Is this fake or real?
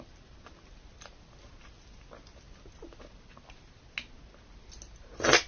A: real